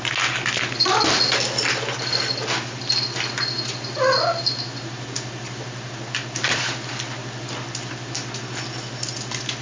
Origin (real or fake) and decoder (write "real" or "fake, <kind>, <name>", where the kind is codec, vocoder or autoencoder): real